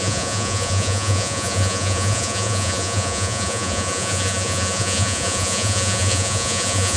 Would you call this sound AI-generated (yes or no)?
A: yes